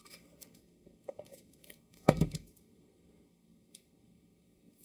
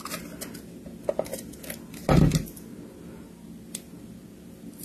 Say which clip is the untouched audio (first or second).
second